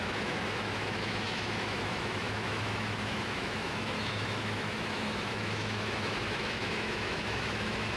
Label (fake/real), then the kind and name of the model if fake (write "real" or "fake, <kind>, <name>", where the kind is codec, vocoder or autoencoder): fake, autoencoder, DAC-VAE